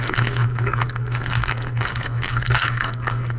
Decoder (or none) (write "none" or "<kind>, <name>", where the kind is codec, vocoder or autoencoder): codec, SNAC